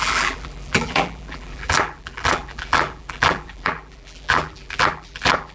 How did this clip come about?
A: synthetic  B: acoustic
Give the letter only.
A